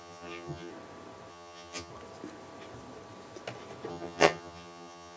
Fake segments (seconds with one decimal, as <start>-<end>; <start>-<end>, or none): 0.0-0.7; 1.3-1.9; 3.9-5.2

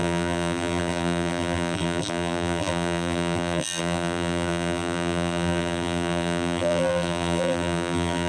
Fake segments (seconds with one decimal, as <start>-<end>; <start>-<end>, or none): 0.0-8.3